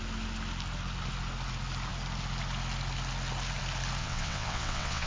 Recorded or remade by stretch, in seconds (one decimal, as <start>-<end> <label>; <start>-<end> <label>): 0.0-4.0 recorded; 4.0-5.1 remade